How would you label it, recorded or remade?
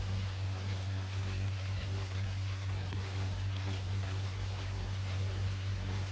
remade